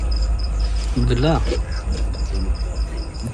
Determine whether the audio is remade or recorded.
remade